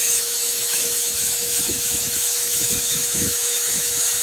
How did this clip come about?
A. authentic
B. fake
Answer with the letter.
B